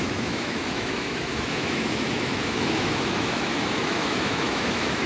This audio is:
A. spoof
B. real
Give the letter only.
A